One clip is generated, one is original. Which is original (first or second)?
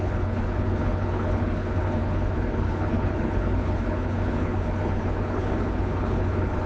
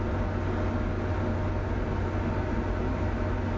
second